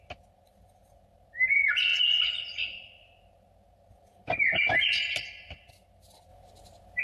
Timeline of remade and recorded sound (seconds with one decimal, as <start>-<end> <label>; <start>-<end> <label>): 0.0-7.0 recorded